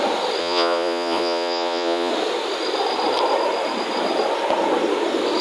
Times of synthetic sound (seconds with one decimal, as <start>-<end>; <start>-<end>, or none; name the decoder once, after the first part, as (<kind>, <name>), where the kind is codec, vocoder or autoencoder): 0.4-2.1 (vocoder, Vocos)